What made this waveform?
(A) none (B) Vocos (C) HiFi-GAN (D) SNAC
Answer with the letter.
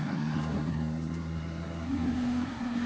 D